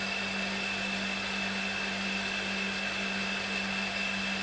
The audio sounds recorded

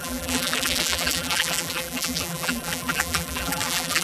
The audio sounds remade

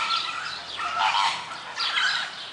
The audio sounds recorded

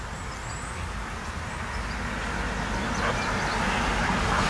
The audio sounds recorded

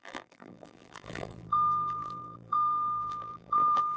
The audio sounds remade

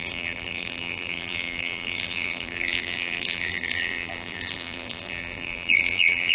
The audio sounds remade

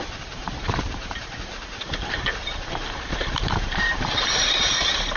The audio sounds remade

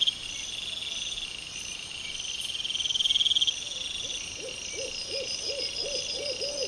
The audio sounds recorded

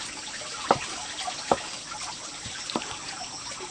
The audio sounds remade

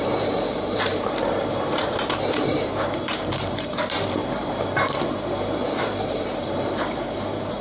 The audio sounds remade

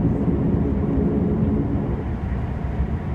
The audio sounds recorded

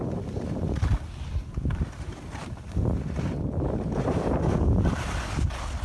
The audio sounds recorded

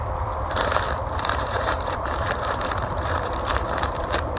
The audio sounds remade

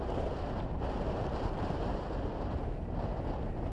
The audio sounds remade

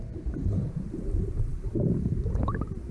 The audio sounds remade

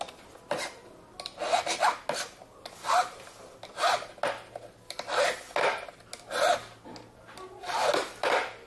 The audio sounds recorded